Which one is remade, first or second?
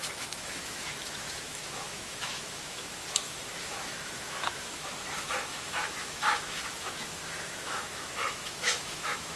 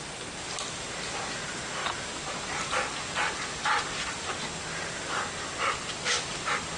first